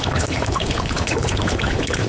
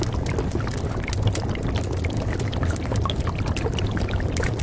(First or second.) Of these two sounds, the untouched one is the second